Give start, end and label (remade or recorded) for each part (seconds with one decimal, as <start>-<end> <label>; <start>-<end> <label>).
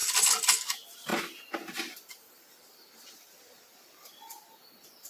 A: 0.0-5.1 recorded